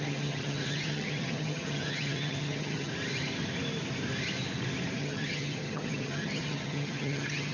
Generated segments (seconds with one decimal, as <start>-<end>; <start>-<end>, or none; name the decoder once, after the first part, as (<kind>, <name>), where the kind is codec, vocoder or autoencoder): 0.0-2.9 (vocoder, HiFi-GAN); 5.0-7.5